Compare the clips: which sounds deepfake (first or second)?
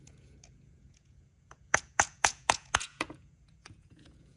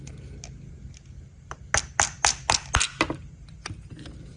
first